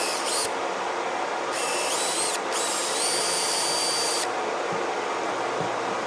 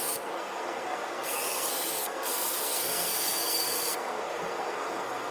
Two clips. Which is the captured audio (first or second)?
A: first